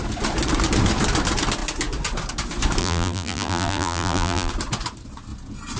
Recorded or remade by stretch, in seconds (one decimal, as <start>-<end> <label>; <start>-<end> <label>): 0.0-2.8 recorded; 2.8-4.5 remade; 4.5-5.8 recorded